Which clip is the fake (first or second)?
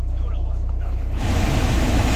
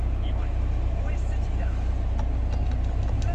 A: first